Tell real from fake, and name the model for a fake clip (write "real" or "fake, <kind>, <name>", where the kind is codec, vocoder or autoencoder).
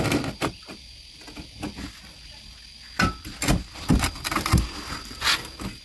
real